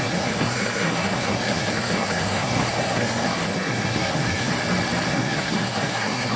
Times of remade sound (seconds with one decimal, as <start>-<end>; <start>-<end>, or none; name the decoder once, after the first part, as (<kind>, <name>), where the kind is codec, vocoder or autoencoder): 0.0-4.5 (codec, SNAC); 5.1-6.4